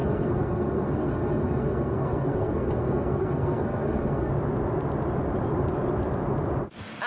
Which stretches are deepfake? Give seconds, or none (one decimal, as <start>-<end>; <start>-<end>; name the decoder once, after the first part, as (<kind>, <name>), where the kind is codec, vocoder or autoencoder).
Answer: 0.0-4.3 (codec, SNAC)